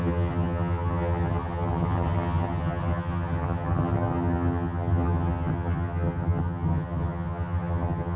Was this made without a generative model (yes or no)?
no